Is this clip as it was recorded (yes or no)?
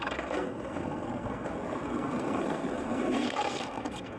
no